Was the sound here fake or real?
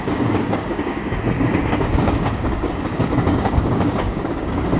fake